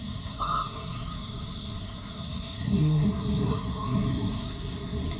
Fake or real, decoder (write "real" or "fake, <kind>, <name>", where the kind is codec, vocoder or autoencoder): fake, codec, SNAC